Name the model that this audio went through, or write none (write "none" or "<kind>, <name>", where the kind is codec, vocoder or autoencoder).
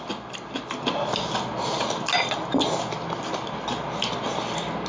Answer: none